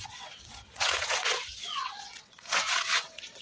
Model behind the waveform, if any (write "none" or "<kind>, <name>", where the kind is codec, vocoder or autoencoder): vocoder, WaveNeXt